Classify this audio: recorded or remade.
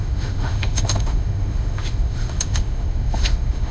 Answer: remade